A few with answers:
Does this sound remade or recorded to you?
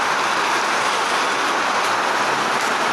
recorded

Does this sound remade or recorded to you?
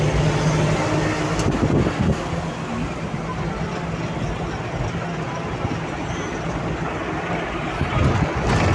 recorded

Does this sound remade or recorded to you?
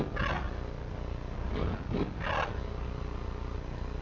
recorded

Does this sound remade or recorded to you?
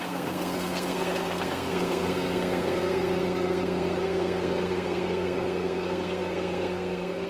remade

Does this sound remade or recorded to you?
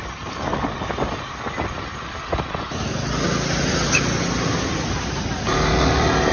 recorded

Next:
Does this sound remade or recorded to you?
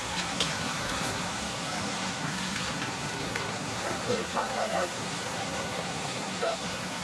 remade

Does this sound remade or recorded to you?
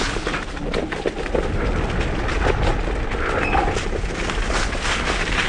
recorded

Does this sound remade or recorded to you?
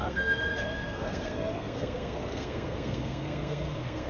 remade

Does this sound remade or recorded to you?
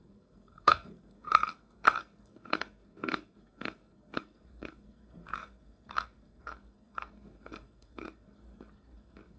remade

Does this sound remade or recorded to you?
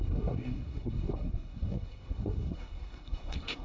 remade